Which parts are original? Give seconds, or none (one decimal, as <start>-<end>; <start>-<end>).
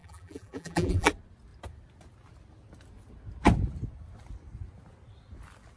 1.1-5.8